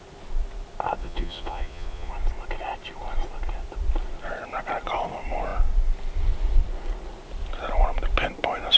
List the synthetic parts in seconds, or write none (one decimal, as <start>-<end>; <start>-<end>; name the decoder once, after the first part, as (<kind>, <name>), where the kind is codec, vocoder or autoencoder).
1.0-2.1 (vocoder, Vocos)